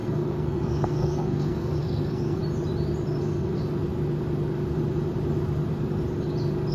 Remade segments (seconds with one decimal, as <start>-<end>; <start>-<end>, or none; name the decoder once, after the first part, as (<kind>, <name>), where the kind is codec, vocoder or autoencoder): 0.0-2.4 (codec, SNAC); 3.2-3.6